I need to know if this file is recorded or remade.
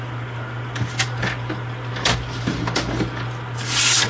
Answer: recorded